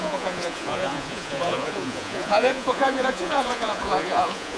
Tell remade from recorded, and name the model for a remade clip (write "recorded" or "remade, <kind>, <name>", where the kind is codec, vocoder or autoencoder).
remade, vocoder, Vocos